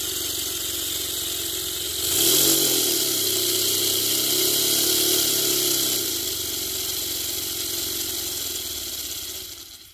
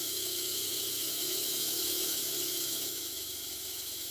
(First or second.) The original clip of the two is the first